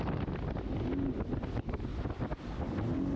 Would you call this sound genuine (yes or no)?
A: yes